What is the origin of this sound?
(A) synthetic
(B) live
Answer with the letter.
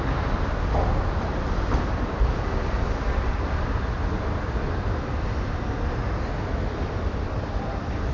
B